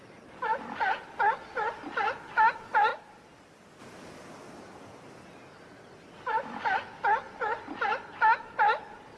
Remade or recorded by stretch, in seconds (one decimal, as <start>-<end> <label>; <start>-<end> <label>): 0.0-9.2 recorded